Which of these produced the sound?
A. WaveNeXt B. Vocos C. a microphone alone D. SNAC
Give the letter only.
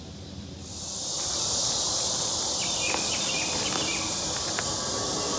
C